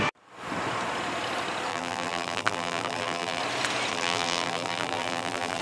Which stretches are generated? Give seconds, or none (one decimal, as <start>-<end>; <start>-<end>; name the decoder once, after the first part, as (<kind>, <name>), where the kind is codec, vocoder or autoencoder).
1.7-3.4 (vocoder, BigVGAN v2); 3.9-5.6